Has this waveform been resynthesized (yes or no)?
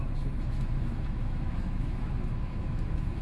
yes